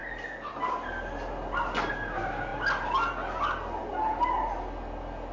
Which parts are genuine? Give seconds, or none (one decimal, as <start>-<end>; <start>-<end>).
0.0-5.3